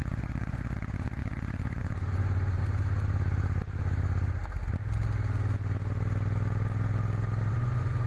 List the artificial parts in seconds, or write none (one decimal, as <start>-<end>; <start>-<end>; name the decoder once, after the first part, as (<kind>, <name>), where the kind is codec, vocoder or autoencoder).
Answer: 0.0-2.6 (vocoder, Vocos); 7.5-8.1